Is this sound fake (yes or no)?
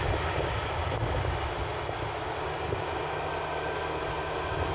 no